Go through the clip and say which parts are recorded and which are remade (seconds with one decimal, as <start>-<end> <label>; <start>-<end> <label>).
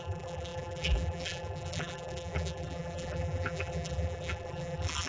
0.0-5.1 remade